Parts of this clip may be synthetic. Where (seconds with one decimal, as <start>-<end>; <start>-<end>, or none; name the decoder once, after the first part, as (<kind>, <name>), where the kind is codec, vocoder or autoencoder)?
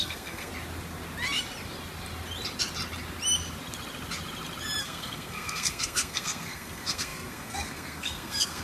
0.0-0.5 (codec, SNAC); 4.8-8.6